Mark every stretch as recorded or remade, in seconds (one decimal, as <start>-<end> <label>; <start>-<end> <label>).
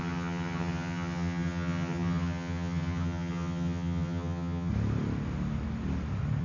0.0-4.7 remade; 4.7-6.4 recorded